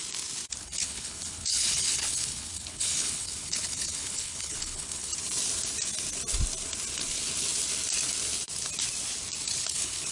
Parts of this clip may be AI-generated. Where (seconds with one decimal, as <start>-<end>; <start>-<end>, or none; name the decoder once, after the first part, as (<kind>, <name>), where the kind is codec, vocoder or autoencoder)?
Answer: 0.6-5.1 (codec, HILCodec); 9.6-10.1